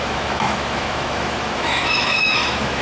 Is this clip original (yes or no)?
no